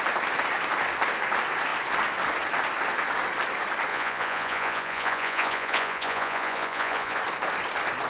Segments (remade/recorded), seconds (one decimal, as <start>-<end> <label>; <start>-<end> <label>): 0.0-3.9 recorded; 3.9-7.2 remade; 7.2-8.1 recorded